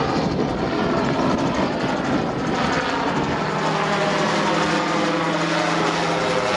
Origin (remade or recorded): recorded